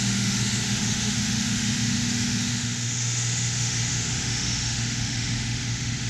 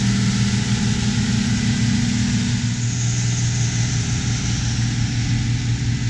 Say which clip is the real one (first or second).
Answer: second